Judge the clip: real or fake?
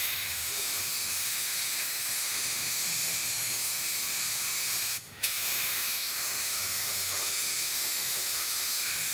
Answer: fake